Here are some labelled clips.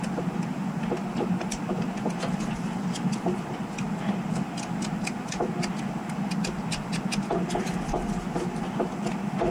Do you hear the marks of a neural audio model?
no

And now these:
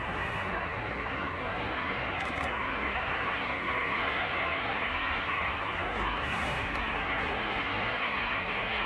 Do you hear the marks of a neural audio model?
yes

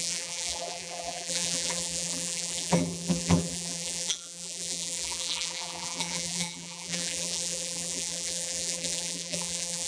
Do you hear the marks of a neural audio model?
yes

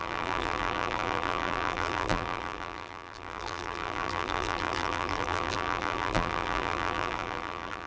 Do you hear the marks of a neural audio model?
yes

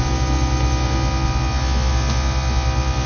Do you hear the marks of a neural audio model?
no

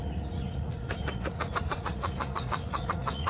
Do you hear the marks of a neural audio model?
yes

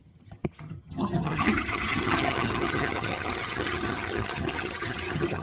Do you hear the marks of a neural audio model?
yes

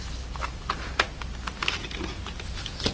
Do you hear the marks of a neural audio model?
no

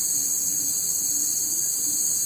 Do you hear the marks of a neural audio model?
no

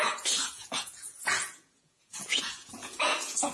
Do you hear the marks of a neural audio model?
yes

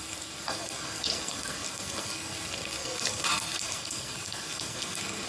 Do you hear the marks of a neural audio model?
yes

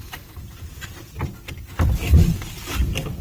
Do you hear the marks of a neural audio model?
yes